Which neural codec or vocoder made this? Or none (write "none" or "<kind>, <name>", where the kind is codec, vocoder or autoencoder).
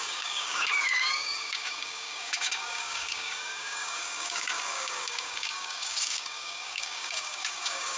codec, DAC